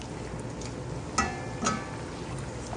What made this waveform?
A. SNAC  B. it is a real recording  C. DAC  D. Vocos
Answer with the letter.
B